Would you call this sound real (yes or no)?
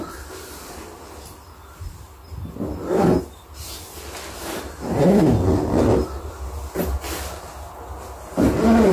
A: yes